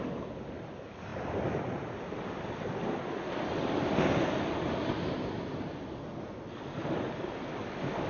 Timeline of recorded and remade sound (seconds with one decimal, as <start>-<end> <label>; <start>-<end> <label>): 0.0-8.1 recorded